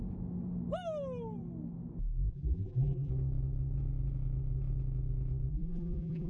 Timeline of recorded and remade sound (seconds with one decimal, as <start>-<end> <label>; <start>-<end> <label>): 0.0-2.3 recorded; 2.3-3.1 remade; 3.1-5.5 recorded; 5.5-6.3 remade